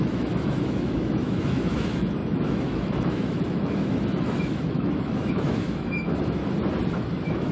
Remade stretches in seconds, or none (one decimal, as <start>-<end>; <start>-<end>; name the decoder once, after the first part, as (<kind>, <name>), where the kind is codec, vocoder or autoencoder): 0.0-6.4 (autoencoder, DAC-VAE); 7.0-7.5